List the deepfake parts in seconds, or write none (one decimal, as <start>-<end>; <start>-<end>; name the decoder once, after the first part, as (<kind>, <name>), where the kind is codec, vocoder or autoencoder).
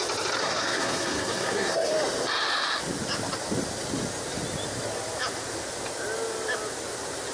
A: 0.4-1.9 (codec, SNAC)